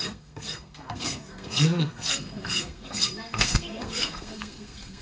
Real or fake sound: fake